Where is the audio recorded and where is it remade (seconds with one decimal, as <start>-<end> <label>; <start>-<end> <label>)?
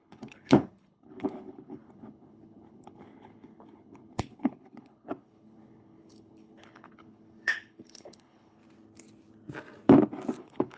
0.0-8.6 remade; 8.6-10.4 recorded; 10.4-10.8 remade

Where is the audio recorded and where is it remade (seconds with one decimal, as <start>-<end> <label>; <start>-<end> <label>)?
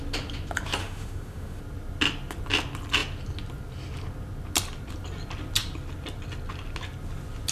0.0-0.8 recorded; 0.8-1.6 remade; 1.6-7.5 recorded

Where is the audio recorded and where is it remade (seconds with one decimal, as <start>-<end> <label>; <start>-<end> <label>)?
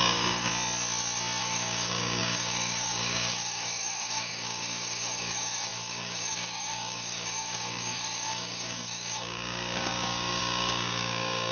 0.0-0.5 remade; 0.5-1.4 recorded; 1.4-11.5 remade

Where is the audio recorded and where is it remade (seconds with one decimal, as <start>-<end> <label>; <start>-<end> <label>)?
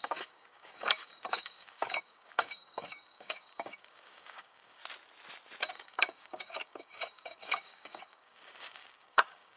0.0-4.8 remade; 4.8-5.7 recorded; 5.7-9.6 remade